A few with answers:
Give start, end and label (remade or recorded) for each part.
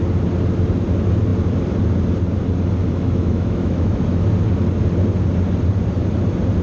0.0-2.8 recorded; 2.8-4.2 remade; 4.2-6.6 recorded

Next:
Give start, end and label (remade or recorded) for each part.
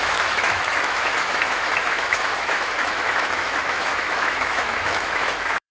0.0-5.7 remade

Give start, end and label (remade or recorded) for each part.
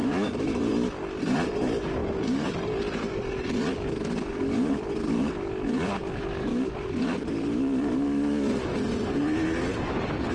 0.0-0.7 remade; 0.7-10.3 recorded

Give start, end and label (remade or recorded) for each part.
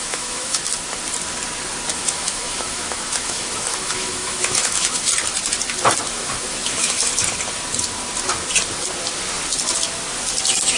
0.0-0.6 remade; 0.6-1.9 recorded; 1.9-5.1 remade; 5.1-6.1 recorded; 6.1-7.1 remade; 7.1-10.8 recorded